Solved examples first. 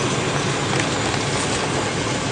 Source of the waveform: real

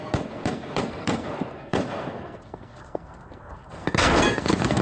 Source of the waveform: fake